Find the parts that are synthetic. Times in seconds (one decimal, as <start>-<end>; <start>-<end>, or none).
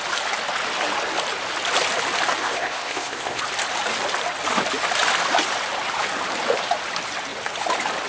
2.4-3.4